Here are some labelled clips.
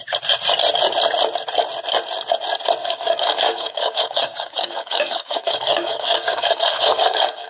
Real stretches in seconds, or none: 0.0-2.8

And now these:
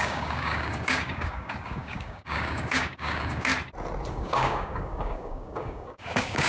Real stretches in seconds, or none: 3.5-4.1

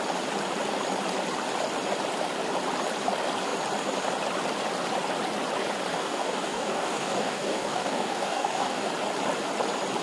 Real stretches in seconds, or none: 0.0-5.9; 8.9-10.0

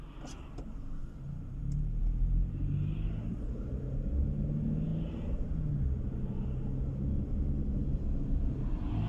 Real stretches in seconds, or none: 0.0-9.1